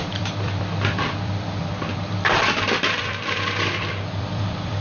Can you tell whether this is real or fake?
fake